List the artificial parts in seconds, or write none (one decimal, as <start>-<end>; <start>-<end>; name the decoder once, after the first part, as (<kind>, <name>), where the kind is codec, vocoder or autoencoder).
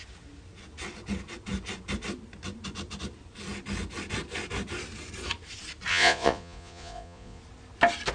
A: 5.9-7.4 (vocoder, Vocos)